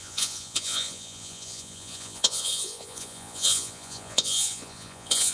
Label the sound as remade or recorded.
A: remade